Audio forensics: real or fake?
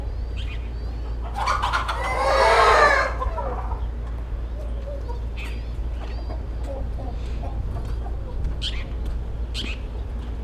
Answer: real